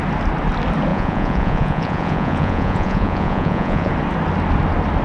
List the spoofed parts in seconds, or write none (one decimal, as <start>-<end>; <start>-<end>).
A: 0.9-3.9